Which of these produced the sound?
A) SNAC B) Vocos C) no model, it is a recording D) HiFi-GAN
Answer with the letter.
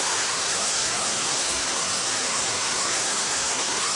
A